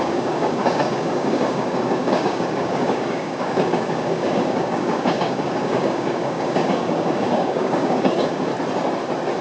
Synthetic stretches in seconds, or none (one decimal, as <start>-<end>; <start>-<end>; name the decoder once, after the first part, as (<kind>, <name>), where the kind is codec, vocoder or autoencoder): 0.0-8.5 (codec, DAC)